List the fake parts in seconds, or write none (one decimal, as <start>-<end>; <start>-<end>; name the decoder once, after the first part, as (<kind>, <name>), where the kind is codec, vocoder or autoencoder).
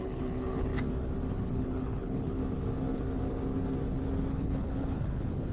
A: 0.0-0.7 (codec, HILCodec); 1.3-2.4; 4.3-5.5